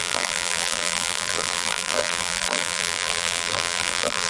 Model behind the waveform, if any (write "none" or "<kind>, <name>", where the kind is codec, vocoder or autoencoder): vocoder, BigVGAN v2